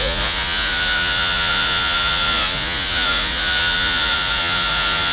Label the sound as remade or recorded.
remade